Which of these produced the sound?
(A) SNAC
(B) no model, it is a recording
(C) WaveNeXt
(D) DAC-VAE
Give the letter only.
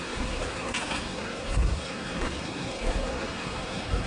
A